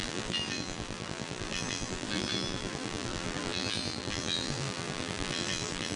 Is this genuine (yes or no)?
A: no